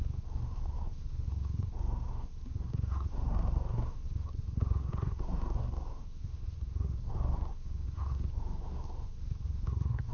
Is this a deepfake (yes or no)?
yes